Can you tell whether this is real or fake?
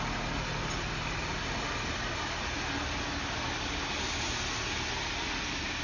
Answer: real